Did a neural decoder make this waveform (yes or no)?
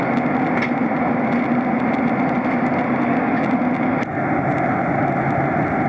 no